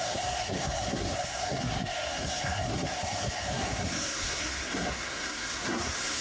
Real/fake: fake